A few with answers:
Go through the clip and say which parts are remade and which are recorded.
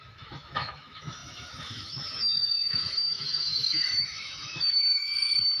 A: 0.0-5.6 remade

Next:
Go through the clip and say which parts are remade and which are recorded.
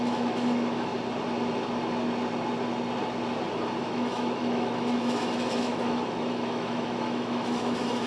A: 0.0-0.9 remade; 0.9-3.8 recorded; 3.8-8.1 remade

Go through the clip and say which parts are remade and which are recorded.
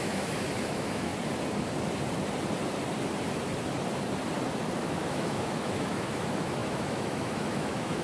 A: 0.0-1.1 remade; 1.1-4.9 recorded; 4.9-8.0 remade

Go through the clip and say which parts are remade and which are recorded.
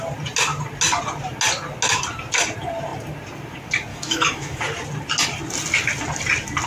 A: 0.0-3.9 recorded; 3.9-4.6 remade; 4.6-6.7 recorded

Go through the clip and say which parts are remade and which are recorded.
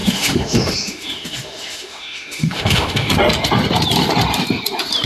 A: 0.0-3.1 remade; 3.1-5.1 recorded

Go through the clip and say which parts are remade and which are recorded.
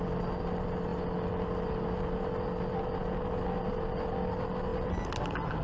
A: 0.0-5.6 recorded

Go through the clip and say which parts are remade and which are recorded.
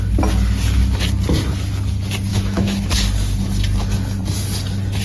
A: 0.0-2.3 recorded; 2.3-2.9 remade; 2.9-5.0 recorded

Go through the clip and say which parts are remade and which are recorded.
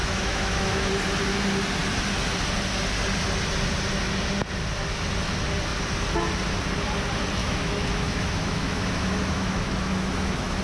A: 0.0-0.9 remade; 0.9-7.4 recorded; 7.4-10.6 remade